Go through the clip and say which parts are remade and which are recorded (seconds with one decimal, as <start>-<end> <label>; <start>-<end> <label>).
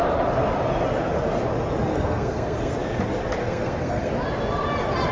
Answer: 0.0-1.9 recorded; 1.9-2.7 remade; 2.7-3.4 recorded; 3.4-4.1 remade; 4.1-5.1 recorded